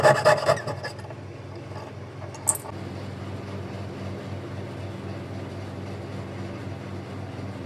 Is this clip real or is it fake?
real